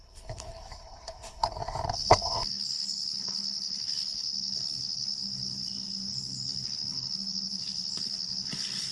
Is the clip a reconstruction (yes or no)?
yes